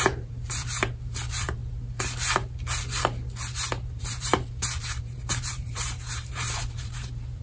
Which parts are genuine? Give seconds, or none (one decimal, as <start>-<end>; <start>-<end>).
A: 1.6-4.0